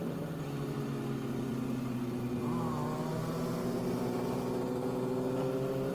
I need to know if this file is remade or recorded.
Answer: recorded